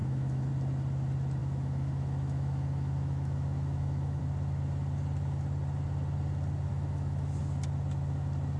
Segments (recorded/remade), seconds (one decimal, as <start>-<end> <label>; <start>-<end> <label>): 0.0-0.5 remade; 0.5-1.4 recorded; 1.4-4.2 remade; 4.2-6.7 recorded; 6.7-7.4 remade; 7.4-8.6 recorded